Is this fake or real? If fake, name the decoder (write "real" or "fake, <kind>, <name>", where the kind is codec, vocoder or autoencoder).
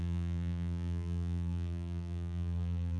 fake, vocoder, BigVGAN v2